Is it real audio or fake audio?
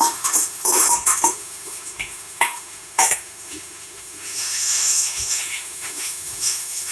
fake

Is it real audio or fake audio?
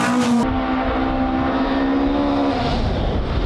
real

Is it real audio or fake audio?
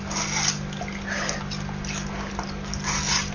real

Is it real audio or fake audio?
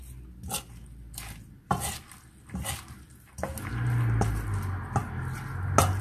real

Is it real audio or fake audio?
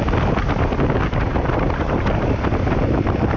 real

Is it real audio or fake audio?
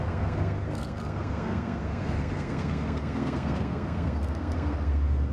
fake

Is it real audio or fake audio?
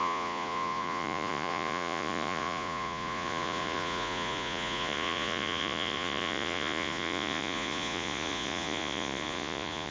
fake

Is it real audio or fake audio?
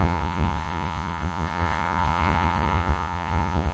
fake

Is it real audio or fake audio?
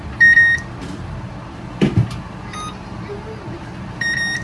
real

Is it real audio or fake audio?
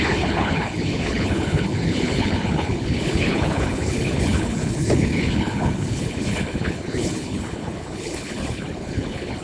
fake